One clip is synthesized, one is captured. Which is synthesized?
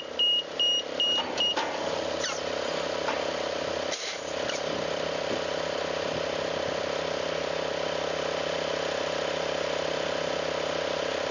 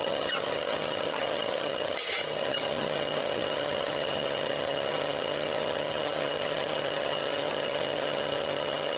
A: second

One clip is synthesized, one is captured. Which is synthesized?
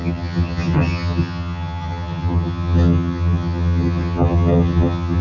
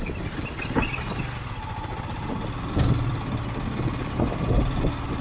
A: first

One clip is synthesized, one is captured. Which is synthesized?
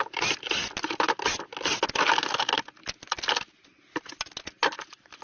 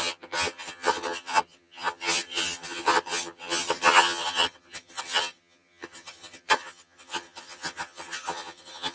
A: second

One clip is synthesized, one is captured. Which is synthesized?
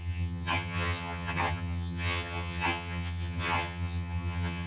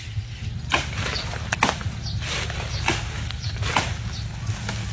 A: first